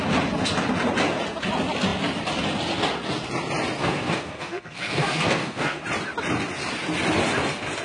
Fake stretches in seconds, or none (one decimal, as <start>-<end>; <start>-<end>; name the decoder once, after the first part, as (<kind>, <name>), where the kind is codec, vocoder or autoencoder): 3.8-5.8 (codec, SNAC)

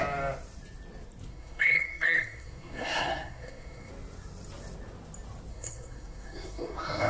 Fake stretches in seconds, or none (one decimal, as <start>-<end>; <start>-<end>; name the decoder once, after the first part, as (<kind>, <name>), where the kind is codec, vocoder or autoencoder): 1.3-3.9 (codec, SNAC); 5.5-7.1

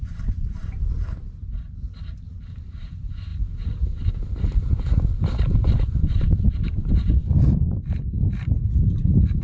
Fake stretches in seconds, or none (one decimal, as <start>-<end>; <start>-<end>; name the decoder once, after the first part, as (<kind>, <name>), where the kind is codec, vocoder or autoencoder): 0.0-1.5 (vocoder, BigVGAN v2); 2.6-3.3; 4.1-7.2

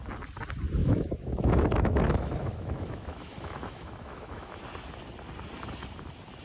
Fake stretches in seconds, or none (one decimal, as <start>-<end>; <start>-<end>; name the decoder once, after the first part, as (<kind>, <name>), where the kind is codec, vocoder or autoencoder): 0.8-4.6 (autoencoder, DAC-VAE)

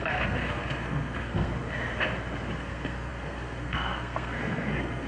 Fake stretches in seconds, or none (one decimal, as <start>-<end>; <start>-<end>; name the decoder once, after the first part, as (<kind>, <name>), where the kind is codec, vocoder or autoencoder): 0.0-1.5 (codec, SNAC); 2.6-5.1